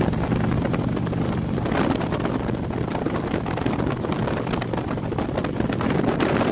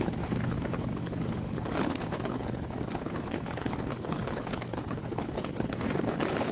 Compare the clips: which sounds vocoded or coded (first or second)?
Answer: second